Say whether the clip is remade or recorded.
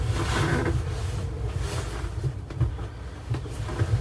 recorded